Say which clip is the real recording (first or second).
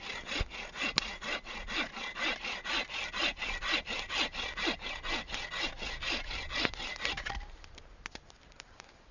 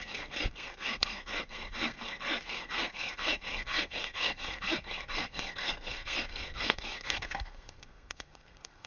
first